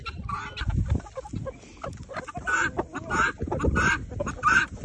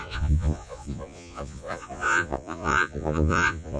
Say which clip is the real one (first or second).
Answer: first